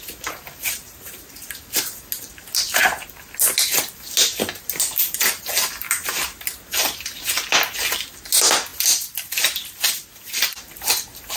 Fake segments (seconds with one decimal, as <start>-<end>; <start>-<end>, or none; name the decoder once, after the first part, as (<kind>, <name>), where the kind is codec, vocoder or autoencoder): none